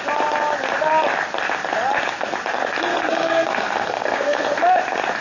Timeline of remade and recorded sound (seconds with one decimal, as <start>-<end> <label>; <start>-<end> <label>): 0.0-2.9 recorded; 2.9-4.6 remade; 4.6-5.2 recorded